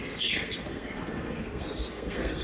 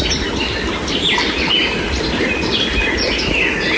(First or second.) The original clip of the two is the second